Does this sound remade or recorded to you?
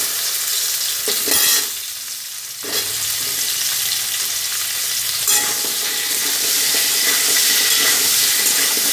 recorded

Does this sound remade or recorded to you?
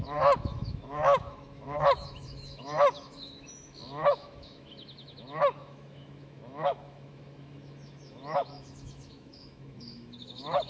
remade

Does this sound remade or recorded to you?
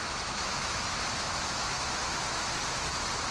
remade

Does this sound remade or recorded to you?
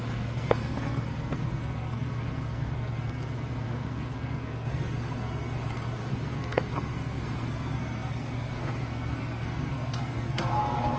remade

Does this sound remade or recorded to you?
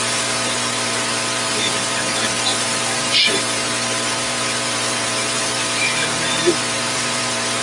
remade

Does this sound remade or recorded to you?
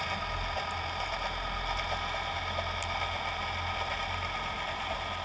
recorded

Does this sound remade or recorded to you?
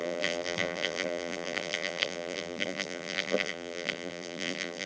remade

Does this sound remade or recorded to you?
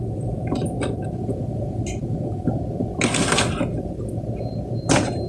recorded